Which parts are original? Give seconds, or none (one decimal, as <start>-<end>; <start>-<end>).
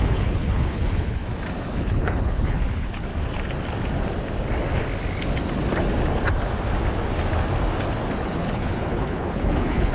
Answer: 1.2-1.7; 3.1-8.2